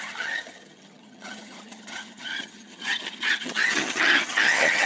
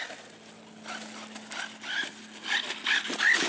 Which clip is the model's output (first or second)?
first